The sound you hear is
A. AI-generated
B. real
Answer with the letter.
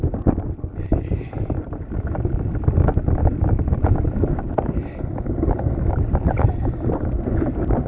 B